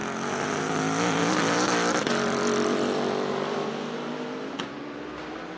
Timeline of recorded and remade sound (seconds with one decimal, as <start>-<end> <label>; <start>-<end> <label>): 0.0-1.2 recorded; 1.2-4.6 remade; 4.6-5.6 recorded